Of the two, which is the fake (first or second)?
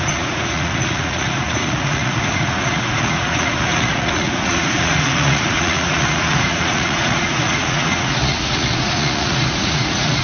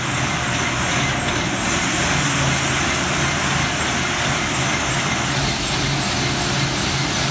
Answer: first